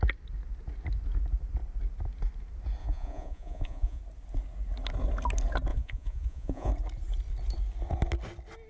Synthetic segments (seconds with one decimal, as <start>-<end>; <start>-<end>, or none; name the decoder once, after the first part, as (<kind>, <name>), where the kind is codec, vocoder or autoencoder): 2.8-4.0 (vocoder, Vocos); 5.7-6.7